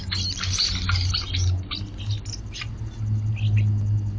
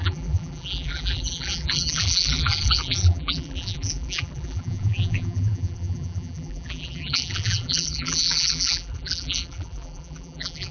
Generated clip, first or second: second